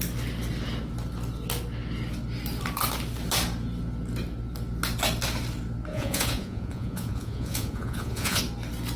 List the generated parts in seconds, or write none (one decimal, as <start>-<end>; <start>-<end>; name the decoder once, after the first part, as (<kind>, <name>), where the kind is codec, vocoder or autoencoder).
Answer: 5.9-8.4 (vocoder, Vocos)